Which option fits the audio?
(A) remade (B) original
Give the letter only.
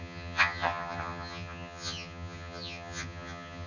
A